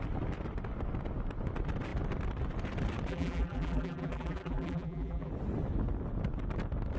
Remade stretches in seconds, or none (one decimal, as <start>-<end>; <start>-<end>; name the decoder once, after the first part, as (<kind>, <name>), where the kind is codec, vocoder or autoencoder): 3.1-5.3 (vocoder, BigVGAN v2)